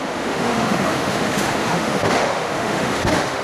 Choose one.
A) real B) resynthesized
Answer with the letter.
B